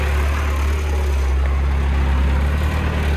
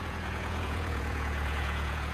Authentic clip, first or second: first